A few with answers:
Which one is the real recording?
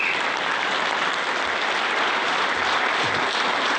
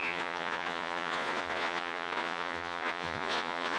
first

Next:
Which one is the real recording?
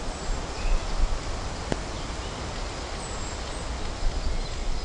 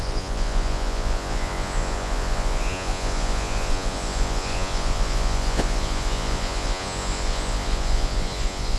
first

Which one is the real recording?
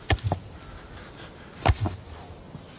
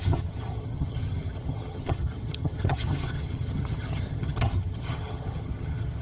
first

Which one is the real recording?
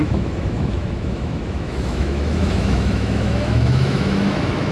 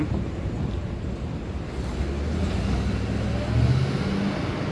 second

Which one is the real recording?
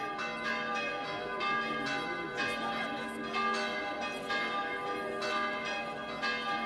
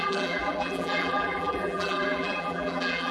first